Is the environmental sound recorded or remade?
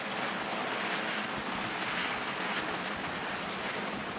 recorded